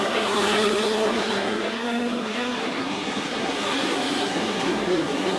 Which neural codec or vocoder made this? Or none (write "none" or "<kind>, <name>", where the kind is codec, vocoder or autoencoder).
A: codec, SNAC